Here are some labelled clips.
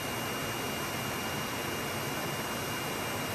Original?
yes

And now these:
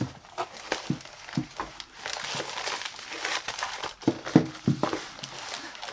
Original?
yes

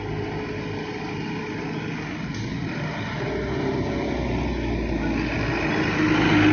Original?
yes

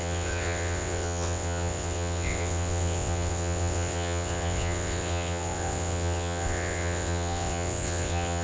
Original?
no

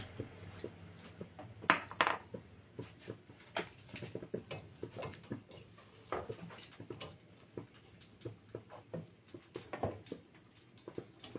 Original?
yes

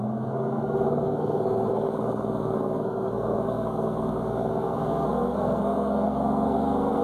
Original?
no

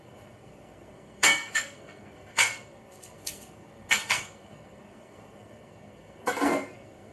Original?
no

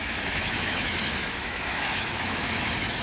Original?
no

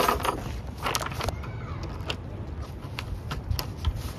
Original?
yes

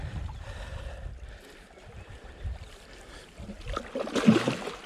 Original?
yes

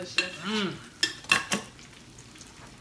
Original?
yes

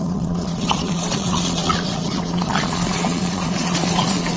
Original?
no